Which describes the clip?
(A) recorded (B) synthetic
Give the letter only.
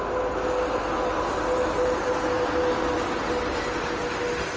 A